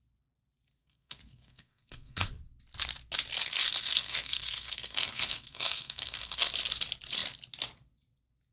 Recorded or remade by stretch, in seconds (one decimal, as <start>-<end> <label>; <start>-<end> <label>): 0.0-0.8 recorded; 0.8-2.3 remade; 2.3-3.7 recorded; 3.7-6.5 remade; 6.5-8.5 recorded